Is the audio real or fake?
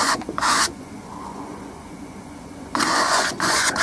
fake